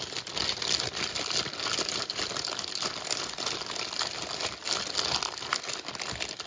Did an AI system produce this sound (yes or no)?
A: no